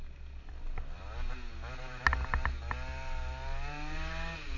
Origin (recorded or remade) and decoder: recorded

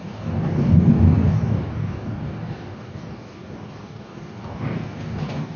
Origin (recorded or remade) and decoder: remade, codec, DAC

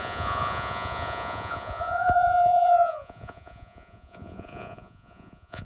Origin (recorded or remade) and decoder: remade, vocoder, Vocos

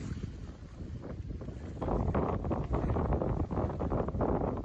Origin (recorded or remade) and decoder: recorded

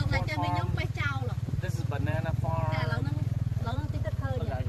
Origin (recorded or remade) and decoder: remade, vocoder, BigVGAN v2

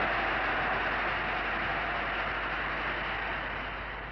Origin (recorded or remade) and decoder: recorded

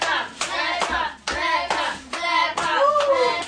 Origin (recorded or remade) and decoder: recorded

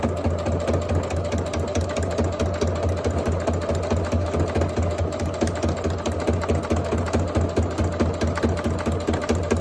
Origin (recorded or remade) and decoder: recorded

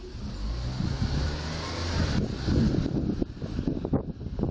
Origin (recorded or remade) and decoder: recorded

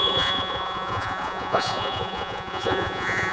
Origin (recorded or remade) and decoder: remade, vocoder, Vocos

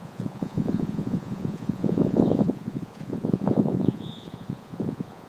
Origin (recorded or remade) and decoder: remade, vocoder, Vocos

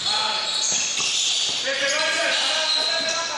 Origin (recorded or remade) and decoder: recorded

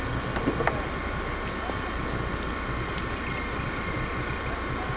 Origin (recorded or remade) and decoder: recorded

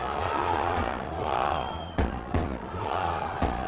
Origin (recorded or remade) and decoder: remade, vocoder, Vocos